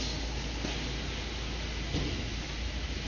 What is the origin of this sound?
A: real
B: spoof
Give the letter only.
A